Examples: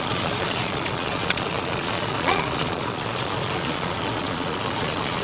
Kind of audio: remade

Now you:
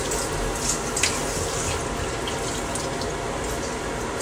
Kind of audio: recorded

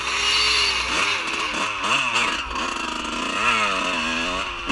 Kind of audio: recorded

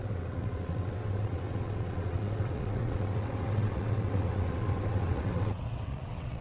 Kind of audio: remade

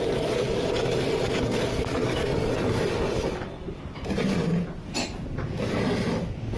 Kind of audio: recorded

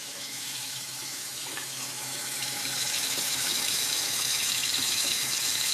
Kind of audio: remade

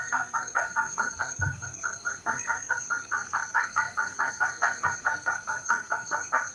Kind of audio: remade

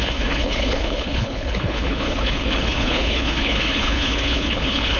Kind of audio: remade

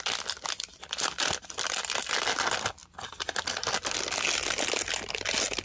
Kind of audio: recorded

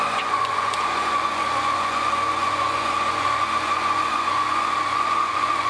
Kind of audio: remade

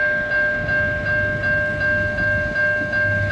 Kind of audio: recorded